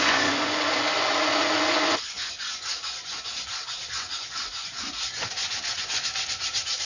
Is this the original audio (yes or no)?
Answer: no